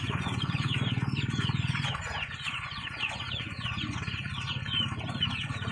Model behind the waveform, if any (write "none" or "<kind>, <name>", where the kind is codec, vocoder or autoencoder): vocoder, Vocos